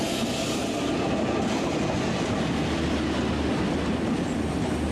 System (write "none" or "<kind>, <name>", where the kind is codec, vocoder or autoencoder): none